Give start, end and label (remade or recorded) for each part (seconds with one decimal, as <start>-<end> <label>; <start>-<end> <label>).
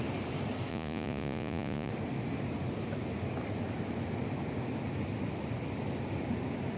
0.0-0.7 recorded; 0.7-1.9 remade; 1.9-6.8 recorded